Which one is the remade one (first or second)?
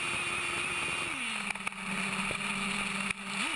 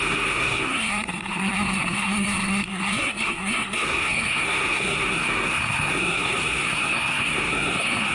second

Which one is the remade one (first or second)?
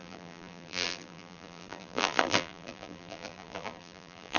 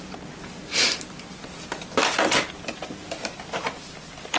first